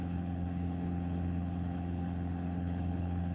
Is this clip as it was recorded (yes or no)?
no